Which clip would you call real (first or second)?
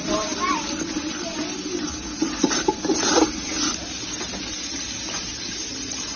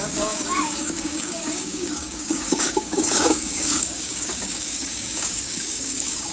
first